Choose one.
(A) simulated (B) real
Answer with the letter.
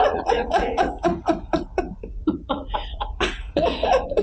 A